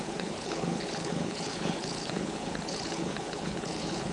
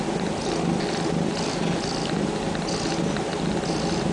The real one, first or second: second